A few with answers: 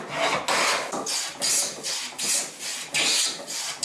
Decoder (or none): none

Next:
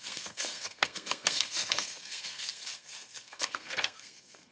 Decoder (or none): codec, SNAC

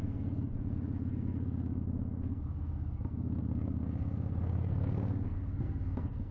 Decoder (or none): codec, SNAC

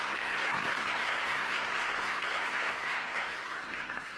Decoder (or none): codec, SNAC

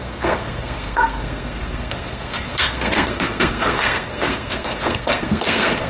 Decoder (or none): codec, SNAC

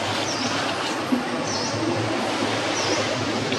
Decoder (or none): none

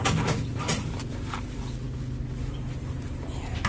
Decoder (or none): none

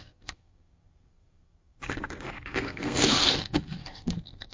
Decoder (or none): codec, SNAC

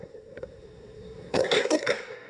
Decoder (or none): codec, SNAC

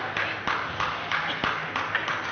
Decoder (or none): none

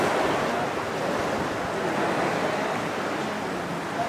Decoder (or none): none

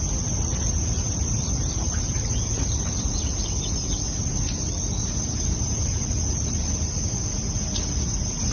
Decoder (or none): none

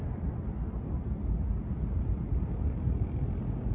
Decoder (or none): none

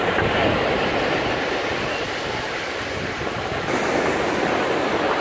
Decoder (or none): none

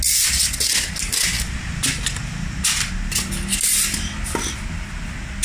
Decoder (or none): none